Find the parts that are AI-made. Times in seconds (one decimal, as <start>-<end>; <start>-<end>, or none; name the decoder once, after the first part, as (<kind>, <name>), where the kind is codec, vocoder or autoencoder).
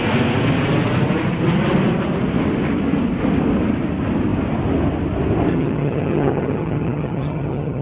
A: 5.5-7.8 (vocoder, HiFi-GAN)